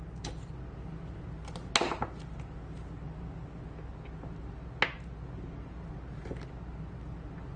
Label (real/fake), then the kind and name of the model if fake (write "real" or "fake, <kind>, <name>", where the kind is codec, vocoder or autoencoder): real